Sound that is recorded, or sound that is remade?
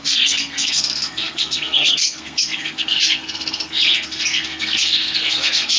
remade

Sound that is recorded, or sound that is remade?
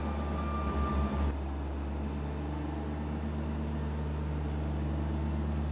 recorded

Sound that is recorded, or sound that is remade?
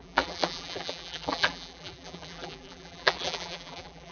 remade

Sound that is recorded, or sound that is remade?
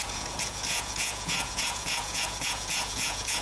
remade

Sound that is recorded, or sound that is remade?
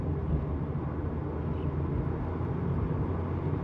recorded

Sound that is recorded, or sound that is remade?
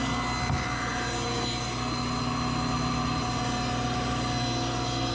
recorded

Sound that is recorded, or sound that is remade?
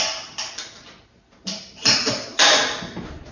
recorded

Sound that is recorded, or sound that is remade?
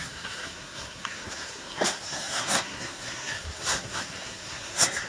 remade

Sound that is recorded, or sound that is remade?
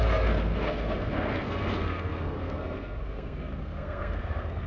remade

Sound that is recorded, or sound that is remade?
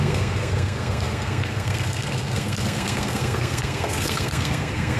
remade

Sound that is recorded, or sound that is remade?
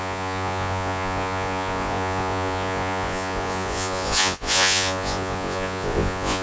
remade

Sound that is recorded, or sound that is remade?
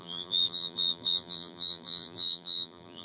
remade